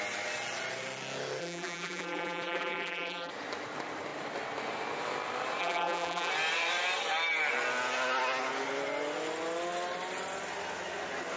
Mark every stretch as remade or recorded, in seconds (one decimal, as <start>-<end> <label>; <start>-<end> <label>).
0.0-1.4 recorded; 1.4-3.3 remade; 3.3-5.6 recorded; 5.6-6.3 remade; 6.3-11.4 recorded